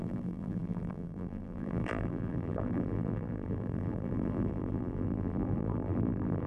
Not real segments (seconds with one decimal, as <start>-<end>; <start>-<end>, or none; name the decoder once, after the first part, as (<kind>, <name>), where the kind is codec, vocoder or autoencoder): 0.0-6.5 (vocoder, BigVGAN v2)